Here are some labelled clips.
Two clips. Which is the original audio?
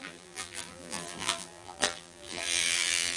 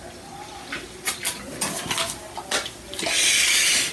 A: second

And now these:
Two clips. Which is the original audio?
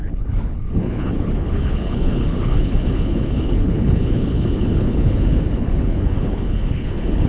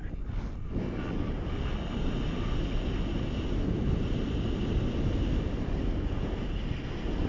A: second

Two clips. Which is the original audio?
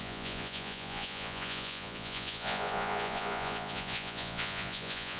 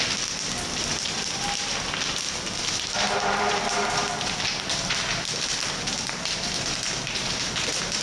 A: second